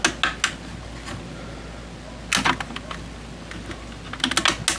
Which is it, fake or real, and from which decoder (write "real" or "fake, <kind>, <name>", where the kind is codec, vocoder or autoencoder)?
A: real